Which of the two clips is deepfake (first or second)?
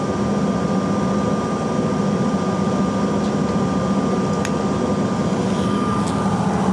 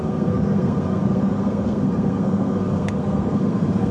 second